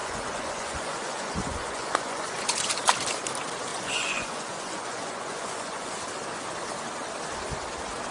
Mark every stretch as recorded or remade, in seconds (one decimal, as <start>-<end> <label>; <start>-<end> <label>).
0.0-2.6 remade; 2.6-3.7 recorded; 3.7-5.9 remade; 5.9-8.1 recorded